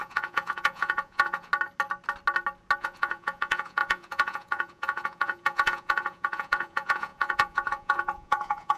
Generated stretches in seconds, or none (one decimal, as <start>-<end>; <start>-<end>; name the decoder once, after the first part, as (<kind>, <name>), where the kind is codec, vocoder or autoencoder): 0.0-1.5 (vocoder, Vocos); 2.8-8.8